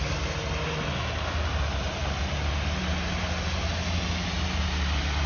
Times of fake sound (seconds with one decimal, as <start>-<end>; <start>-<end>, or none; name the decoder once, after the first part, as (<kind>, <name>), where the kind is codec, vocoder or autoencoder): none

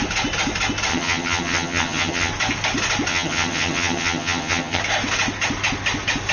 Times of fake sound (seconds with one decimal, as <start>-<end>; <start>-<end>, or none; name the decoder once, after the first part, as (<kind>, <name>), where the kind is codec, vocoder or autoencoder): 0.9-2.3 (vocoder, HiFi-GAN); 3.1-4.8

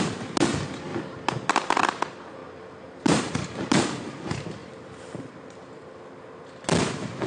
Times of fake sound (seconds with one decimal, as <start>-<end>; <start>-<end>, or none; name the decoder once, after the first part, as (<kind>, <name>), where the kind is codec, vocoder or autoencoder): none

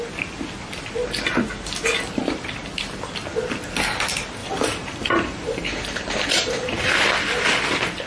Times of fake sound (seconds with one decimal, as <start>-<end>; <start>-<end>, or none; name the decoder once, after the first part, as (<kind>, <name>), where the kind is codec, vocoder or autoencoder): 4.4-6.9 (vocoder, BigVGAN v2)

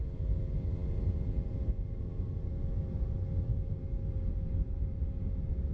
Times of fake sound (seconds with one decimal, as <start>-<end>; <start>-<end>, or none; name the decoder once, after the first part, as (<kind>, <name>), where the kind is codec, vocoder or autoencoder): 0.0-5.7 (vocoder, BigVGAN v2)

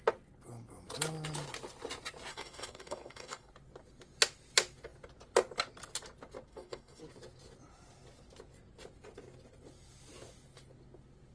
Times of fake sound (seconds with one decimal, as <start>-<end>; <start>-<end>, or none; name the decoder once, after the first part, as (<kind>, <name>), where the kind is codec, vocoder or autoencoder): 2.3-3.5 (codec, DAC); 6.5-7.0

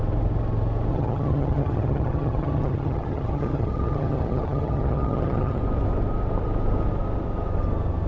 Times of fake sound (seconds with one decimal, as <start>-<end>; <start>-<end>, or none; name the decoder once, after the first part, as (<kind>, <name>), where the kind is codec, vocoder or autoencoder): 0.9-5.6 (vocoder, HiFi-GAN)